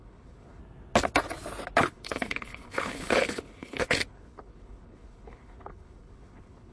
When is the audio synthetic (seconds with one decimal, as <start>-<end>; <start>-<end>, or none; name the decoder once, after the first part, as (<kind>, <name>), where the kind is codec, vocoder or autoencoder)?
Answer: 0.0-0.6 (codec, HILCodec); 1.8-6.7